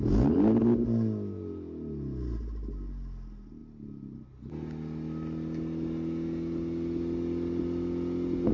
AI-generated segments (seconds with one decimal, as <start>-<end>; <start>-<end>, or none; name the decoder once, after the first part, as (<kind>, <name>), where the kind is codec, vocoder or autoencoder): none